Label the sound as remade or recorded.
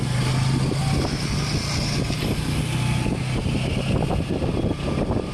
recorded